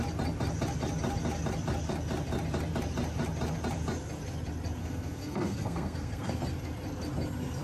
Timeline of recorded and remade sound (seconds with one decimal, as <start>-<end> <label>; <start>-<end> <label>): 0.0-4.8 recorded; 4.8-6.3 remade; 6.3-7.6 recorded